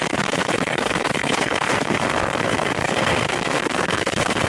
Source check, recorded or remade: remade